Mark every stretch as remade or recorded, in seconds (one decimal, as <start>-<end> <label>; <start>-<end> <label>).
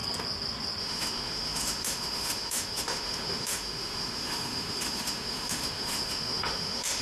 0.0-0.8 recorded; 0.8-7.0 remade